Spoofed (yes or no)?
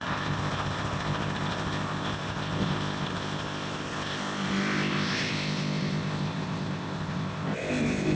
yes